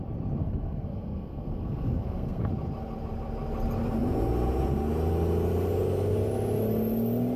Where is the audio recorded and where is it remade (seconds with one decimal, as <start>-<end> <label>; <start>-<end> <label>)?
0.0-0.4 recorded; 0.4-2.5 remade; 2.5-7.4 recorded